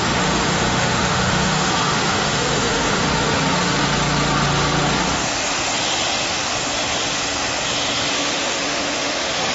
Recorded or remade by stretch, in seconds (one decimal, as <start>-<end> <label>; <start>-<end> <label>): 0.0-3.1 remade; 3.1-8.1 recorded; 8.1-9.5 remade